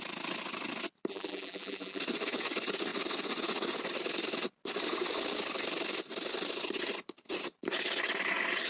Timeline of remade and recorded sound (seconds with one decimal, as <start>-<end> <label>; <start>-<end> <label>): 0.0-1.1 recorded; 1.1-2.0 remade; 2.0-8.7 recorded